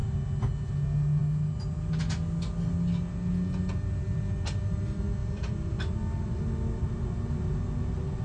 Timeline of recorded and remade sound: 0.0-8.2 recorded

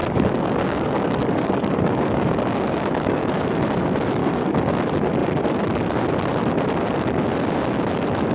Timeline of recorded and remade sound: 0.0-3.3 remade; 3.3-4.2 recorded; 4.2-4.8 remade; 4.8-8.3 recorded

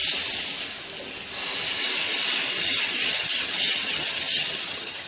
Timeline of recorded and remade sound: 0.0-2.6 recorded; 2.6-5.1 remade

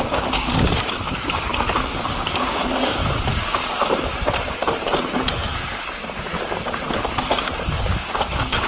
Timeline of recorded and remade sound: 0.0-1.5 remade; 1.5-2.1 recorded; 2.1-3.0 remade; 3.0-7.8 recorded; 7.8-8.7 remade

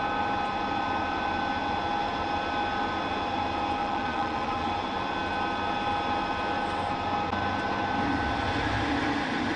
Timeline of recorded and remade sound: 0.0-3.8 recorded; 3.8-4.7 remade; 4.7-9.6 recorded